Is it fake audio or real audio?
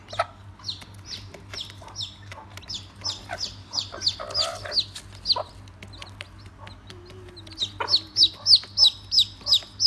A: real